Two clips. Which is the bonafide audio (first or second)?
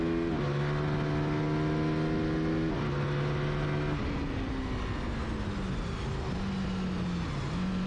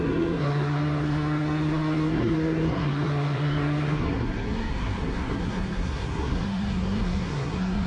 first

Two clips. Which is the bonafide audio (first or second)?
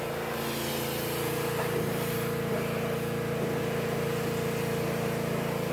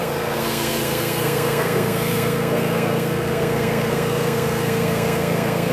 first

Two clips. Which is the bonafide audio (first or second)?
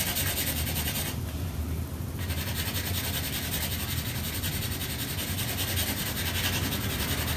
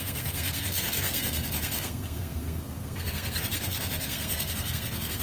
first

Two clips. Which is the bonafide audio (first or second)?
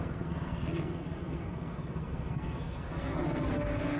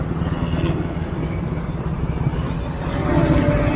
second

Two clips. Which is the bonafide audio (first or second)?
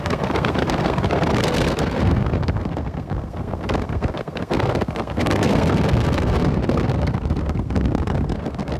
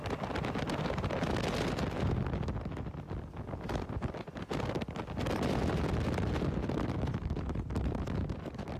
second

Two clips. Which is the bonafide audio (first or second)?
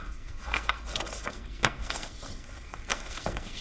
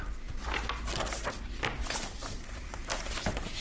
second